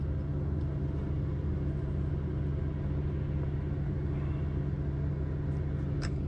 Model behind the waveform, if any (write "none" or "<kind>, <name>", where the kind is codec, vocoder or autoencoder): none